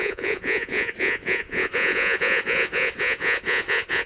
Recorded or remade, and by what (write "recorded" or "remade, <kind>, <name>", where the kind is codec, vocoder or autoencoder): remade, vocoder, Vocos